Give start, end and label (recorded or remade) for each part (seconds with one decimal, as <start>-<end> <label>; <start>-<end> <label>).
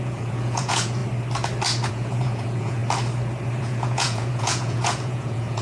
0.0-1.0 remade; 1.0-1.9 recorded; 1.9-2.8 remade; 2.8-3.6 recorded; 3.6-5.6 remade